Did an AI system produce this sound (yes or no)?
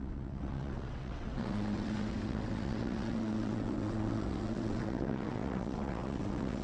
yes